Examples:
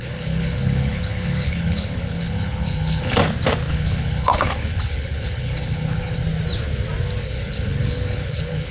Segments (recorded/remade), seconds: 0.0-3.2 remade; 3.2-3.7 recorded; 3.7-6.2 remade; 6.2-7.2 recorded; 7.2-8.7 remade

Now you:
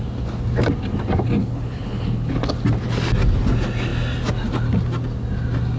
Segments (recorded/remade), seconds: 0.0-1.4 recorded; 1.4-2.3 remade; 2.3-5.8 recorded

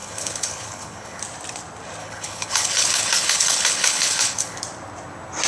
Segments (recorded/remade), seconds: 0.0-1.2 remade; 1.2-2.0 recorded; 2.0-4.6 remade; 4.6-5.5 recorded